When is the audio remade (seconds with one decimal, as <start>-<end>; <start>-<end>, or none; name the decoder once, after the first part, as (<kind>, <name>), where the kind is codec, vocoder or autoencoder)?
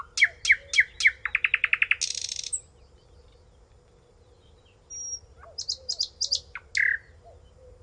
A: none